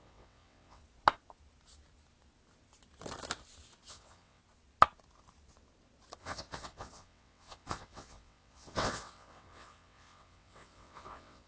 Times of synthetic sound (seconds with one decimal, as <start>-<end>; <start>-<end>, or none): 0.0-0.8; 3.9-4.4; 6.2-11.5